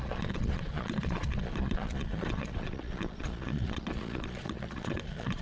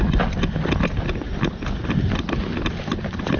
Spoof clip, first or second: first